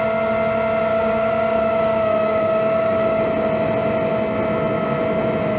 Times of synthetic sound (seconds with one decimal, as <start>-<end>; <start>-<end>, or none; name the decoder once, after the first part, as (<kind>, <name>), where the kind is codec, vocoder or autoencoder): 0.9-3.2 (codec, DAC)

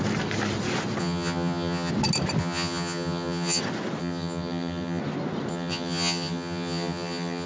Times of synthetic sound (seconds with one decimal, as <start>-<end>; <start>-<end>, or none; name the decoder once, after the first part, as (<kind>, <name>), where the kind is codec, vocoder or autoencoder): 1.0-1.9 (vocoder, HiFi-GAN); 2.4-3.6; 4.0-5.0; 5.5-7.5